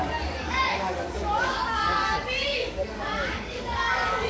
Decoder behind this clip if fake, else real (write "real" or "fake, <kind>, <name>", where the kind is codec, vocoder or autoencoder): fake, codec, DAC